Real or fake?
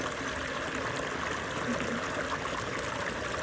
real